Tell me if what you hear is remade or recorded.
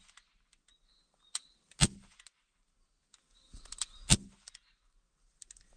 recorded